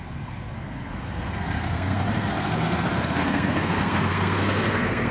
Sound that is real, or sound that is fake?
fake